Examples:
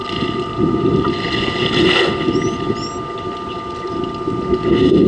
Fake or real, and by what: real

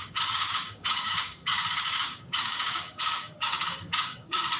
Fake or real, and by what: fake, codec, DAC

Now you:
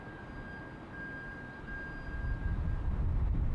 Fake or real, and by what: real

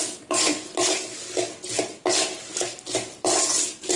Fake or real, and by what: real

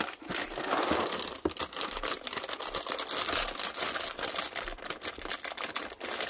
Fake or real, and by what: real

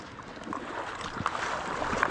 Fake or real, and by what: real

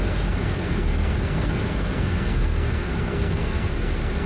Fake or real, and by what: fake, codec, SNAC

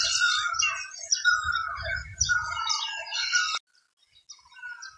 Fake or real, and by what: real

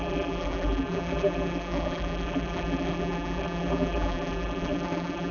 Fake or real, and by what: fake, vocoder, BigVGAN v2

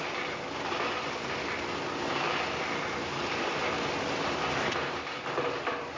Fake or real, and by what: real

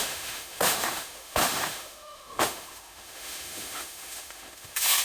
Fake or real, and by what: fake, autoencoder, DAC-VAE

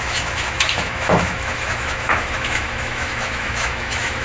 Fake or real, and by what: fake, autoencoder, DAC-VAE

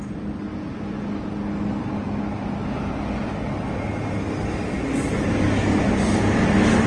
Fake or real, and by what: real